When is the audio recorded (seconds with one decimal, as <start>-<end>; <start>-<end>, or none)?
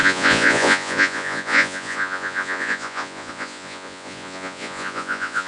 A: none